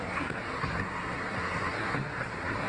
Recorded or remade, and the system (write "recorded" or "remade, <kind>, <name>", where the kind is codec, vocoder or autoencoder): remade, codec, SNAC